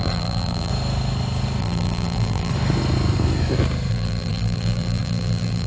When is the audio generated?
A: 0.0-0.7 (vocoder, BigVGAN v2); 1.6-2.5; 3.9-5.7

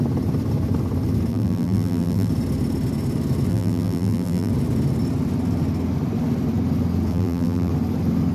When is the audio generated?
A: 1.3-2.3 (vocoder, BigVGAN v2); 3.5-4.5; 7.1-7.7